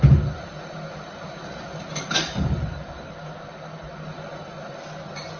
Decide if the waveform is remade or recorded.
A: recorded